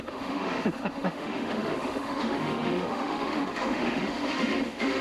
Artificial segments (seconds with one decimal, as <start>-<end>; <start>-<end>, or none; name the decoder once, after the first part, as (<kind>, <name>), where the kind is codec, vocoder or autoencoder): 0.0-5.0 (autoencoder, DAC-VAE)